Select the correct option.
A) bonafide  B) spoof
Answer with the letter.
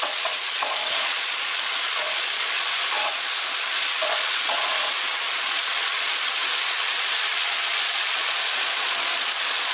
B